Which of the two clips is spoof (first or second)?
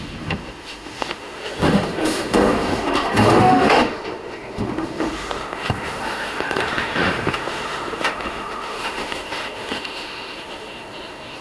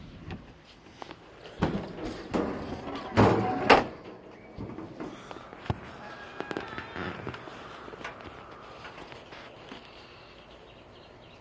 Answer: first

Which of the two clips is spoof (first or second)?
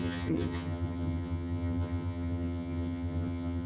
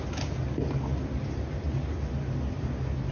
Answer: first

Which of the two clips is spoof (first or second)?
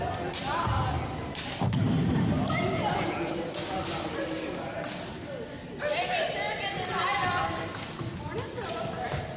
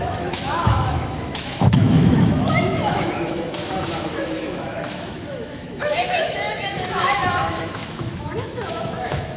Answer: second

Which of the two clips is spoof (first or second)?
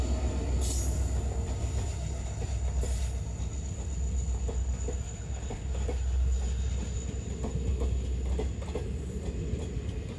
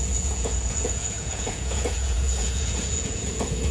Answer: second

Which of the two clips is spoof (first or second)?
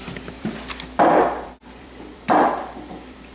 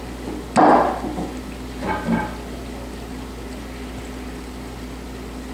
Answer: first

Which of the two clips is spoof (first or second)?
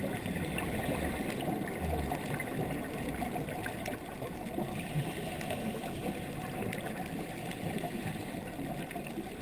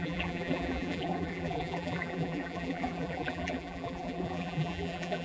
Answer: second